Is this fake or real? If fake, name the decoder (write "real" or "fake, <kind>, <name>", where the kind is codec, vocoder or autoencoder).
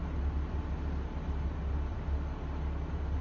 real